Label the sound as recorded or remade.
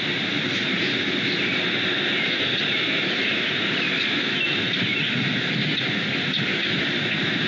remade